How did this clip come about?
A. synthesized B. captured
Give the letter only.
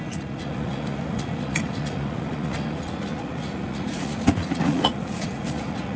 A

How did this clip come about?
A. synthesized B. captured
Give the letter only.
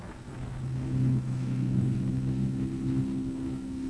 A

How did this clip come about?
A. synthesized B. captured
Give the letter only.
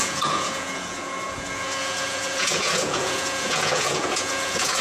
A